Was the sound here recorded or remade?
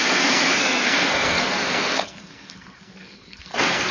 remade